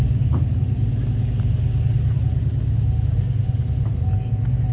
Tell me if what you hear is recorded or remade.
recorded